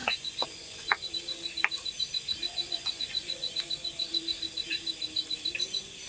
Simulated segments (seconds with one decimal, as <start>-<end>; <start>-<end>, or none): 0.0-1.1; 2.5-3.5